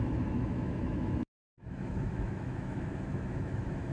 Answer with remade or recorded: remade